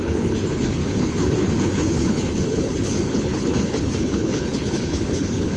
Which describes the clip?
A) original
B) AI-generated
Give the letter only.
B